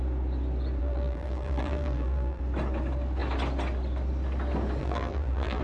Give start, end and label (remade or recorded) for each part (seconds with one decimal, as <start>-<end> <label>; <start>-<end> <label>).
0.0-0.8 recorded; 0.8-2.4 remade; 2.4-4.8 recorded; 4.8-5.6 remade